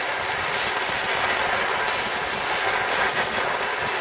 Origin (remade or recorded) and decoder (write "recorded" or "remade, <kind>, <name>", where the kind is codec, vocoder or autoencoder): recorded